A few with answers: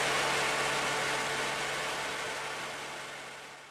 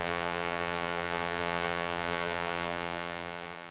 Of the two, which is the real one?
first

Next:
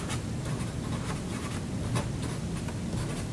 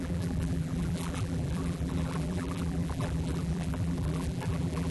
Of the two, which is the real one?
first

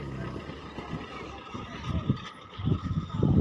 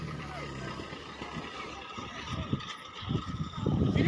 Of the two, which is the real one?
first